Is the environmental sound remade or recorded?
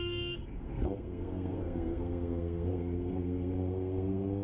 remade